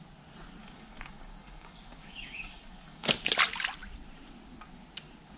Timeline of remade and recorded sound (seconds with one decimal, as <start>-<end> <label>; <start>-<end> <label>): 0.0-0.6 recorded; 0.6-3.1 remade; 3.1-5.4 recorded